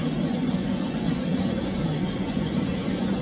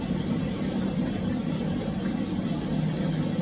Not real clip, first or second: first